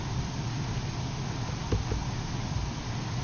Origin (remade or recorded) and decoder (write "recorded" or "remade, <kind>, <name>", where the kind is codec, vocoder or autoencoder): recorded